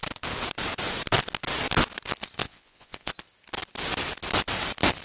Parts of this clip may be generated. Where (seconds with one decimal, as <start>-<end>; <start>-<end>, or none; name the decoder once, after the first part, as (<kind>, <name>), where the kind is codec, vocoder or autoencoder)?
2.4-3.1 (vocoder, Vocos)